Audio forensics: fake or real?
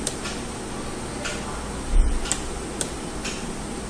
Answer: real